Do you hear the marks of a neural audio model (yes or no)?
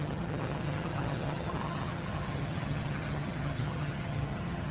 yes